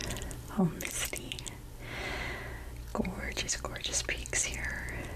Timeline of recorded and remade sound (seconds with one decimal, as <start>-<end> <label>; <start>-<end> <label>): 0.0-5.2 recorded